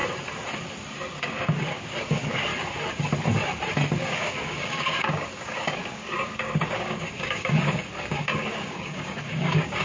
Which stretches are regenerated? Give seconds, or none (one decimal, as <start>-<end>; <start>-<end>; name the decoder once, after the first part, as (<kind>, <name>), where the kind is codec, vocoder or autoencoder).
1.1-2.5 (codec, DAC); 4.0-9.8